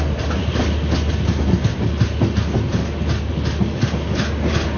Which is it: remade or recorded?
recorded